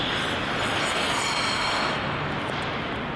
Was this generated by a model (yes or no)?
no